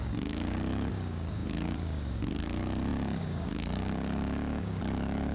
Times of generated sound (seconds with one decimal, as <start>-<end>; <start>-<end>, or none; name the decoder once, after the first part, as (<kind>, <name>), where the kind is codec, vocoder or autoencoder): 0.0-5.3 (codec, DAC)